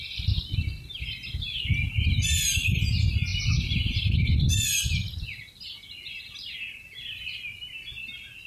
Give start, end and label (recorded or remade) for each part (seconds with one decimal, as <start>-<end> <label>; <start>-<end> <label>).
0.0-8.5 recorded